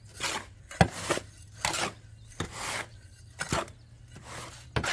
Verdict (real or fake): real